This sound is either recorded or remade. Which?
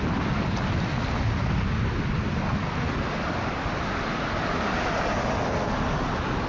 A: recorded